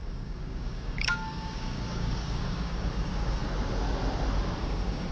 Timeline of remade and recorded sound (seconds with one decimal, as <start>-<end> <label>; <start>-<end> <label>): 0.0-3.4 remade; 3.4-4.6 recorded; 4.6-5.1 remade